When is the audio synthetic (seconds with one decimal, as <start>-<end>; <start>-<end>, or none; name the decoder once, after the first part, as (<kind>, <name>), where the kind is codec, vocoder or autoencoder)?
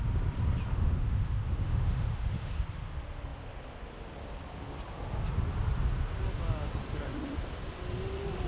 0.7-2.6 (autoencoder, DAC-VAE)